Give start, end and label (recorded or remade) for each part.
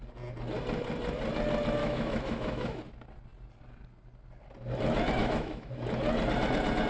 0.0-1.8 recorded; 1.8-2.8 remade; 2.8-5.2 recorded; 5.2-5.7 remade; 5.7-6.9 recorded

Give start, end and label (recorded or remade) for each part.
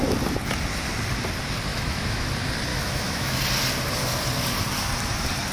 0.0-1.7 recorded; 1.7-2.3 remade; 2.3-2.7 recorded; 2.7-3.4 remade; 3.4-5.5 recorded